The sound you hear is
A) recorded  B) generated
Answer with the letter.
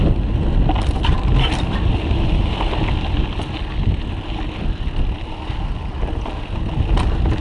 A